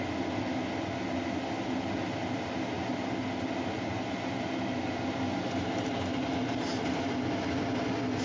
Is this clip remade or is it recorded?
recorded